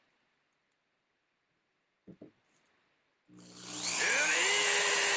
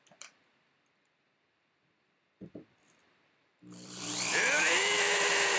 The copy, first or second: second